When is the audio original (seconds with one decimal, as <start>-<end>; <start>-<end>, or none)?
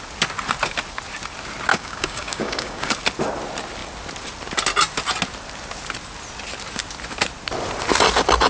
0.0-1.7; 2.9-8.5